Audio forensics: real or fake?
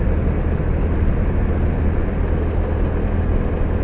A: real